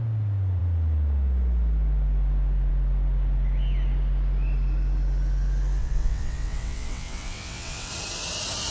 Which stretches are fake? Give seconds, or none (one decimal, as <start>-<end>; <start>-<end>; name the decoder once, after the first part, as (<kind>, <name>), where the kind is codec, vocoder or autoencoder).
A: 5.8-7.9 (vocoder, WaveNeXt)